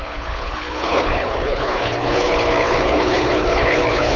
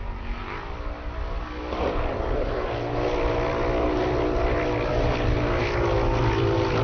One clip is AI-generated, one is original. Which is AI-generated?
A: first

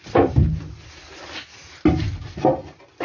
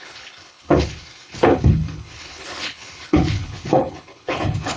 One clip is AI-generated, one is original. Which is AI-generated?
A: second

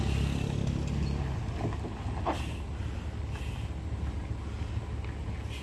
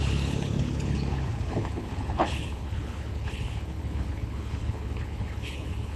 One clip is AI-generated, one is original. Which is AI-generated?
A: second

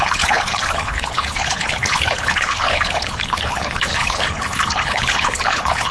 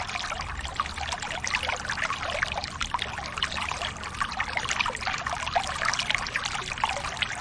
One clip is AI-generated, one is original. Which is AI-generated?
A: first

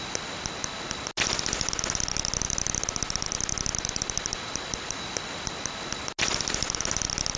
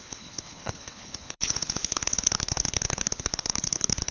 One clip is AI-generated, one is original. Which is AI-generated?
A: second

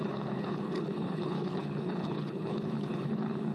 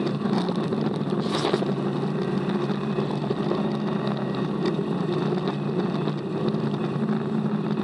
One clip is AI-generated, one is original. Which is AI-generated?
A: first